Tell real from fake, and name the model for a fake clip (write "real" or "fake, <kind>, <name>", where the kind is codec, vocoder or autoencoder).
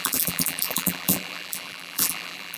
fake, vocoder, BigVGAN v2